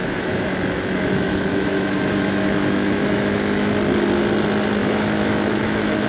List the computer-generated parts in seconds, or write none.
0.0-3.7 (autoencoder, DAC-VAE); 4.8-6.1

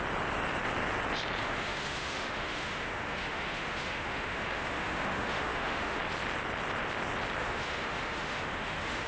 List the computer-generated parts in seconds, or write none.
1.4-6.0 (autoencoder, DAC-VAE); 7.4-9.1

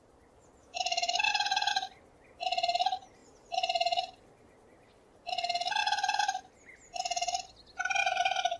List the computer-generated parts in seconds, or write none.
0.6-1.9 (autoencoder, DAC-VAE)

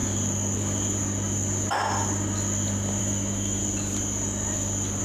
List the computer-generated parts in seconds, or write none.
3.0-3.6 (autoencoder, DAC-VAE)

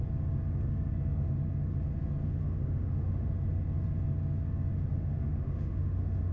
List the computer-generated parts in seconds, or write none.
2.2-3.3 (autoencoder, DAC-VAE); 4.7-6.3

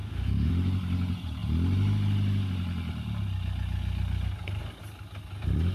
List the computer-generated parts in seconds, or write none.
0.0-0.5 (autoencoder, DAC-VAE)